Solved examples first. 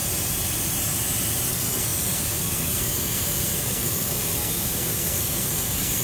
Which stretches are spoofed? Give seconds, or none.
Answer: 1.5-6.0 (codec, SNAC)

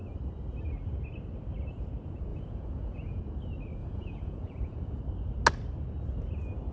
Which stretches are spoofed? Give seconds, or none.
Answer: 2.3-3.2 (vocoder, Vocos); 3.8-5.0

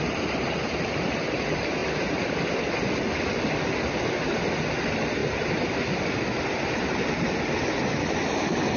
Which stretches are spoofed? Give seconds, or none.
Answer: none

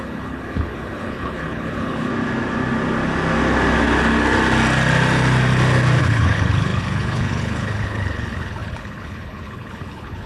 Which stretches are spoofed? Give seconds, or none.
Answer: 0.0-2.1 (codec, HILCodec); 6.0-10.3

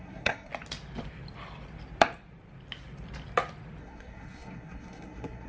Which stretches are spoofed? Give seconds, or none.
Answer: 0.0-0.5 (codec, SNAC); 3.8-5.5

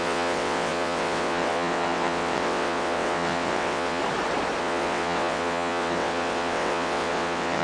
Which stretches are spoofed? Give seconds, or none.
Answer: 0.0-4.0 (vocoder, WaveNeXt); 4.6-7.6

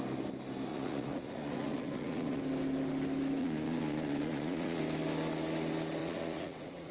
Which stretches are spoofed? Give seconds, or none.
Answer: 0.7-2.4 (vocoder, Vocos); 3.4-4.8; 6.0-6.9

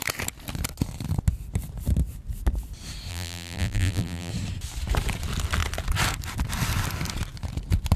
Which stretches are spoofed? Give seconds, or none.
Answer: 3.1-4.3 (vocoder, BigVGAN v2)